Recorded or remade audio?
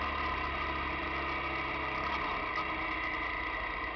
recorded